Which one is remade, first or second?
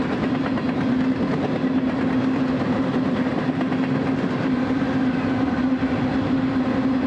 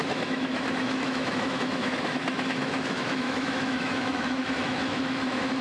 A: second